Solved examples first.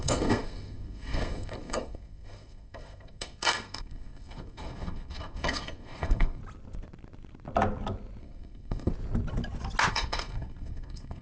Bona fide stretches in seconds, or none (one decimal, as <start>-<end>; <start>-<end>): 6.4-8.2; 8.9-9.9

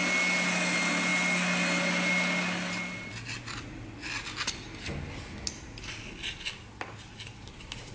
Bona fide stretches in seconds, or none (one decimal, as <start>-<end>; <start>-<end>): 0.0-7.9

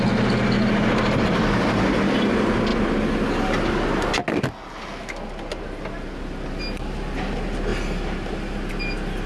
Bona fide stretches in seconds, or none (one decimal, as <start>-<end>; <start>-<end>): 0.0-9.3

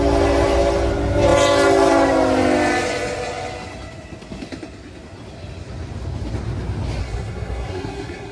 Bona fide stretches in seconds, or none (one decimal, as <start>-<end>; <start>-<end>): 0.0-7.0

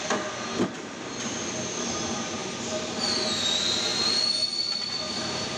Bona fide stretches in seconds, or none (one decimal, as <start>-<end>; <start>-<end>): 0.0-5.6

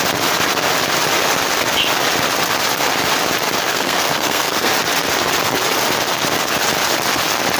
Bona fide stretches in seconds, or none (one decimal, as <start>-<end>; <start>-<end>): 0.0-3.7; 4.7-7.6